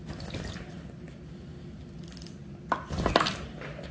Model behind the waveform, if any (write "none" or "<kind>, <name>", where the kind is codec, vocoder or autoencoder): none